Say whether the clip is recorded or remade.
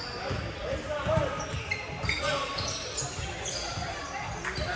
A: recorded